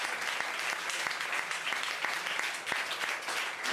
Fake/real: real